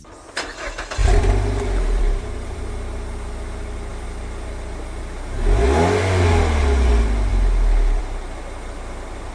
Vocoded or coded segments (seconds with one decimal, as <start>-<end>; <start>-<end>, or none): 1.0-2.7